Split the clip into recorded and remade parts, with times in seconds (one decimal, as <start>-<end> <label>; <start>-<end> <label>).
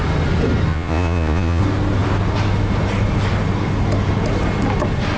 0.0-0.7 recorded; 0.7-1.6 remade; 1.6-5.2 recorded